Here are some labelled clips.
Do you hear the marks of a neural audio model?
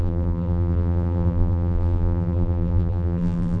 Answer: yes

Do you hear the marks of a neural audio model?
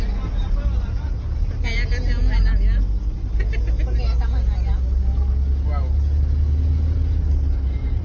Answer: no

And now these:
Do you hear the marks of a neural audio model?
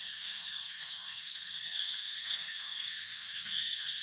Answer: yes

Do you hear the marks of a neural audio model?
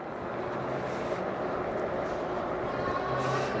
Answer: no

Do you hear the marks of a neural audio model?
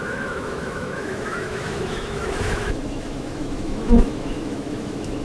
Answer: yes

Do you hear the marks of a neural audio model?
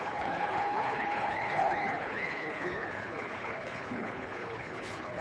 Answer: yes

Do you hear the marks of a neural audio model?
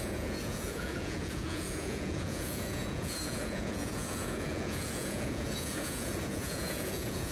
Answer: yes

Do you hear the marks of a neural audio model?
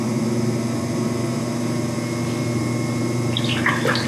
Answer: no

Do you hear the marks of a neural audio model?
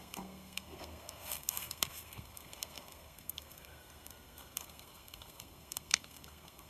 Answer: yes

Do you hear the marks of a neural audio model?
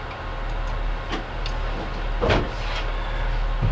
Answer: no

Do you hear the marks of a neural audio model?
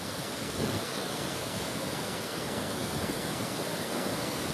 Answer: yes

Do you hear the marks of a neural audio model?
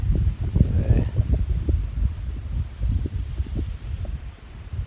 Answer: no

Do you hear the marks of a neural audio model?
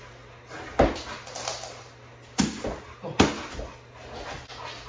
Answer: no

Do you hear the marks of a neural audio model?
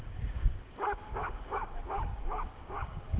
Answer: yes